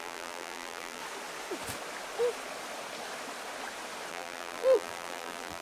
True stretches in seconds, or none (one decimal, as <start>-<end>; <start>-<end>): 1.0-4.1